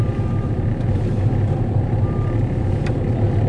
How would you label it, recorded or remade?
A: remade